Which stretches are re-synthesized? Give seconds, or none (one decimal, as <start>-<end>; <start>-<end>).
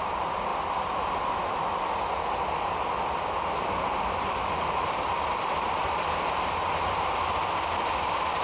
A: none